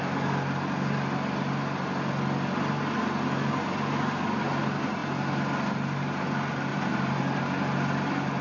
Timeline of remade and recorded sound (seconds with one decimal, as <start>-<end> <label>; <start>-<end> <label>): 0.0-6.7 recorded; 6.7-7.4 remade; 7.4-8.4 recorded